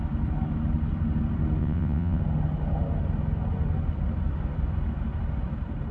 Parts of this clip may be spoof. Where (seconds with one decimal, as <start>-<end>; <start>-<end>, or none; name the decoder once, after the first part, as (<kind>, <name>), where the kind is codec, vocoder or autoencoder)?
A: 1.6-2.2 (vocoder, WaveNeXt)